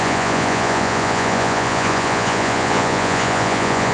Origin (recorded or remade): remade